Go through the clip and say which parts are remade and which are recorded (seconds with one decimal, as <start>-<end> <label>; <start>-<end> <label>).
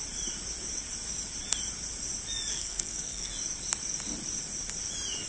0.0-2.5 recorded; 2.5-3.3 remade; 3.3-5.3 recorded